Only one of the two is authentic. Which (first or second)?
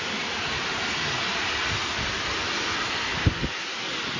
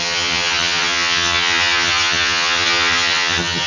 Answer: first